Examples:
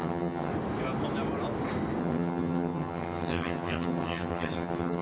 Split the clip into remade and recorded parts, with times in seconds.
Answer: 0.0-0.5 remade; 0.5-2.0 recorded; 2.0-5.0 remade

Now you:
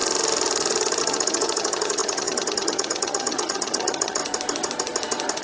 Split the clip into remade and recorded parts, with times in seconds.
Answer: 0.0-1.0 recorded; 1.0-4.2 remade; 4.2-5.4 recorded

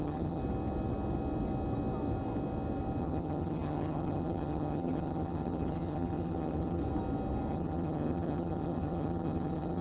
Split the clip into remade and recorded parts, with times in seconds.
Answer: 0.0-0.4 remade; 0.4-3.0 recorded; 3.0-6.8 remade; 6.8-7.5 recorded; 7.5-9.8 remade

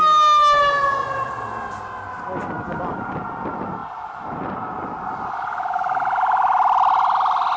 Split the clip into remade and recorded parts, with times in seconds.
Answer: 0.0-7.6 recorded

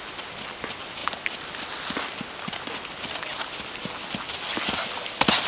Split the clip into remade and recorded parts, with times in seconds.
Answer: 0.0-5.5 recorded

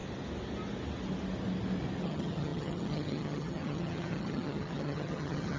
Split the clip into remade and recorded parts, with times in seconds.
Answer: 0.0-2.0 recorded; 2.0-5.6 remade

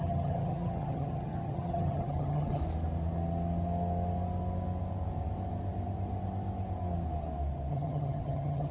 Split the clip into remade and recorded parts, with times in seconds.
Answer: 0.0-2.6 remade; 2.6-7.7 recorded; 7.7-8.7 remade

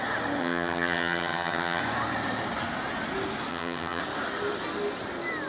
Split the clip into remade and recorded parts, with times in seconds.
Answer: 0.0-0.4 recorded; 0.4-1.8 remade; 1.8-3.5 recorded; 3.5-4.0 remade; 4.0-5.5 recorded